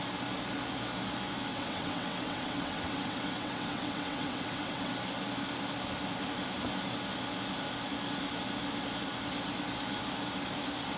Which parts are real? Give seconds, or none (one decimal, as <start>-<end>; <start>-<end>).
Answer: 0.0-1.5; 4.9-11.0